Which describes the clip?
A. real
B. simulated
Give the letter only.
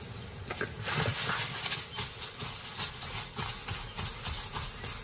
A